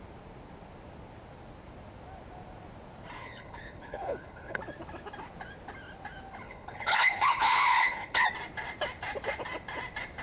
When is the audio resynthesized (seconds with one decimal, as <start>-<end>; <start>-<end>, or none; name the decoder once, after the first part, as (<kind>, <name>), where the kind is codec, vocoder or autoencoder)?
3.2-4.6 (codec, HILCodec); 6.4-8.3